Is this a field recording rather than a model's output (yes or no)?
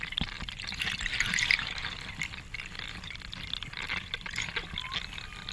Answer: yes